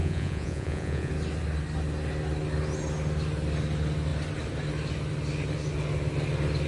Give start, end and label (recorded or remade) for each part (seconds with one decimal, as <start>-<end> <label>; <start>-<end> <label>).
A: 0.0-1.1 remade; 1.1-6.7 recorded